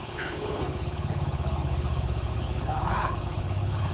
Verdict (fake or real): fake